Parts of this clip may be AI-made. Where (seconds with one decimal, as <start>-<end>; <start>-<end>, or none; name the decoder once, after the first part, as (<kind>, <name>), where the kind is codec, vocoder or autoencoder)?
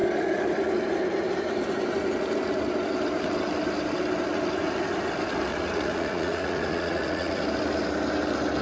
5.5-7.4 (vocoder, Vocos)